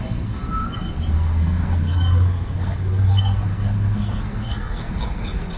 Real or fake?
fake